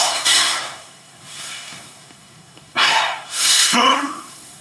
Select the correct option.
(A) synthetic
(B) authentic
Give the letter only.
A